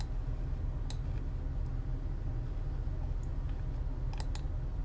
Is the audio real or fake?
real